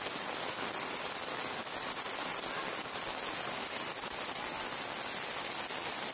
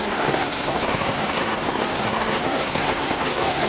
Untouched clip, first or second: first